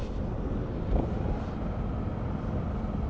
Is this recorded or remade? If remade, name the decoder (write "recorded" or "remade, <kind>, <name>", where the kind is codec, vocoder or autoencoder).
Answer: recorded